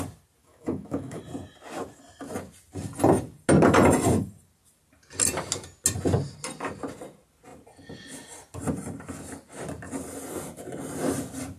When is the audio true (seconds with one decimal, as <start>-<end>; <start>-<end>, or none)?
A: 0.0-0.4; 1.2-11.6